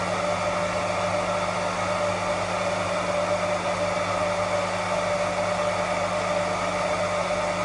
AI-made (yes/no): no